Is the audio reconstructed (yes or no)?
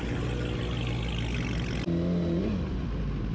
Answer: no